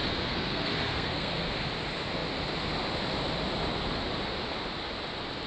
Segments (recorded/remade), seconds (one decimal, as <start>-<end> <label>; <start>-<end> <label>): 0.0-1.5 remade; 1.5-5.5 recorded